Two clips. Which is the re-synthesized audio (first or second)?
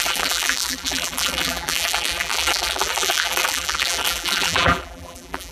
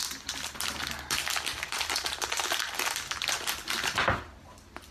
first